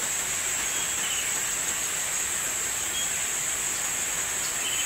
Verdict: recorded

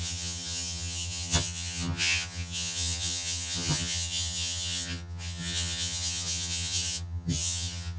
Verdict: remade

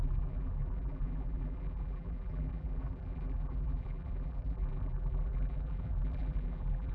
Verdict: remade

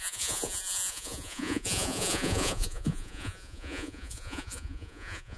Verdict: remade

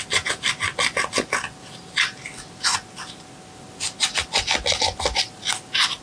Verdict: recorded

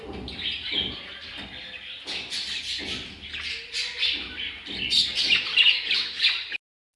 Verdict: recorded